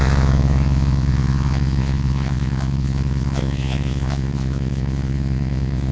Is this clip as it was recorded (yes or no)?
no